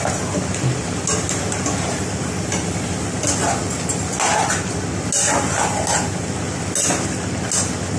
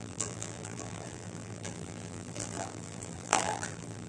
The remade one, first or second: second